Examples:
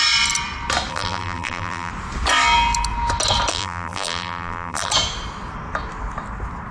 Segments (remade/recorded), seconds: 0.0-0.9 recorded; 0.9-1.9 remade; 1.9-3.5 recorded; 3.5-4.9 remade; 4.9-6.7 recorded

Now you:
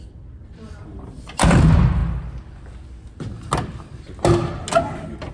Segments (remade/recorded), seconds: 0.0-2.0 remade; 2.0-5.3 recorded